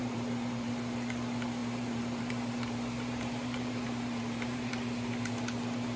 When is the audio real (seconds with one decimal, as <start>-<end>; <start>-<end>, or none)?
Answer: 0.7-1.6; 4.7-6.0